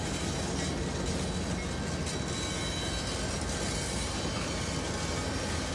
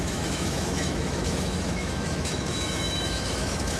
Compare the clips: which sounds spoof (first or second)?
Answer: second